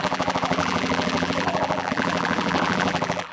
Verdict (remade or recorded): remade